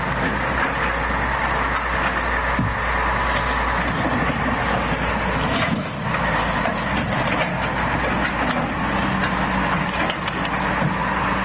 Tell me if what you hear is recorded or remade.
recorded